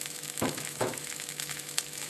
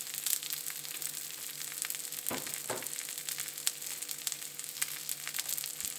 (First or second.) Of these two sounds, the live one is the second